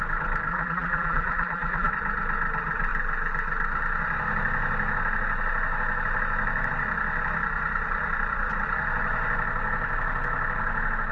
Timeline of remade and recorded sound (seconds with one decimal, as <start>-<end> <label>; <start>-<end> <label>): 0.0-0.5 recorded; 0.5-1.9 remade; 1.9-11.1 recorded